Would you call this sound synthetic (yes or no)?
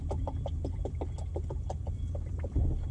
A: no